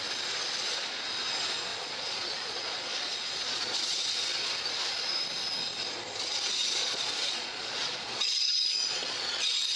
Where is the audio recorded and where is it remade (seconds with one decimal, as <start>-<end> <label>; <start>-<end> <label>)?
0.0-1.7 recorded; 1.7-4.0 remade; 4.0-6.6 recorded; 6.6-9.3 remade; 9.3-9.8 recorded